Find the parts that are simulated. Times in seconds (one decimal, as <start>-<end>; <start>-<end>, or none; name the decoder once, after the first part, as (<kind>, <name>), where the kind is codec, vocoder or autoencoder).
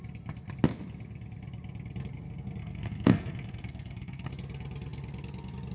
2.6-4.3 (codec, SNAC)